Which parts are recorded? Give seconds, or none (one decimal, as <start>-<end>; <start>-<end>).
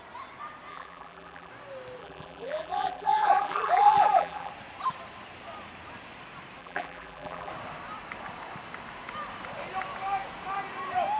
0.0-0.7; 1.5-2.0; 4.5-6.6; 7.5-11.2